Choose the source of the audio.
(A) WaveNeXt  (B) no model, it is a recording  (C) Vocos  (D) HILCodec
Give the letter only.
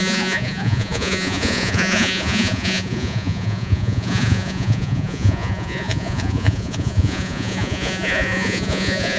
C